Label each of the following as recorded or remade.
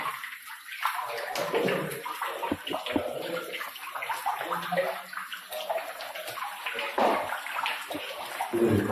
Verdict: recorded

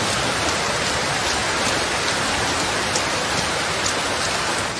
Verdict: recorded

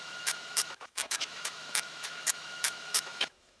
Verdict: remade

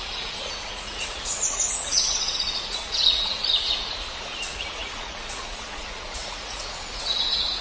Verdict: remade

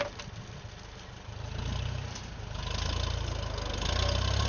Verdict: recorded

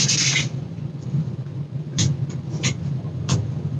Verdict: remade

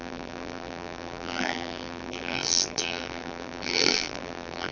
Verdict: remade